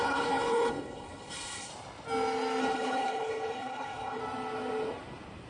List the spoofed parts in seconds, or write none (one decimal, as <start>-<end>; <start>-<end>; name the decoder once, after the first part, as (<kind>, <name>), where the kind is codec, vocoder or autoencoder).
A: 0.0-1.7 (codec, HILCodec); 2.6-4.2